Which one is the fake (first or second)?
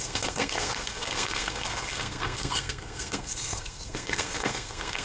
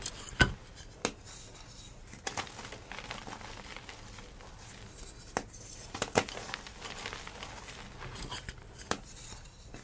first